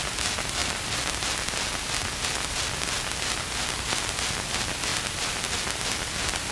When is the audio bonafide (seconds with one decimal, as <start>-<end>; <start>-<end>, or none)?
0.0-4.9; 5.5-6.5